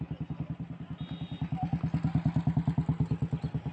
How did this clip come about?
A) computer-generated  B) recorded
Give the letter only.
B